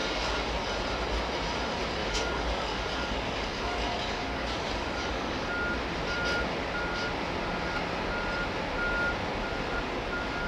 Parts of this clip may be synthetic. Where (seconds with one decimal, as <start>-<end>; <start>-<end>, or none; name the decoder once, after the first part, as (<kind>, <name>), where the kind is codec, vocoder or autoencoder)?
0.0-0.6 (codec, DAC); 2.0-5.5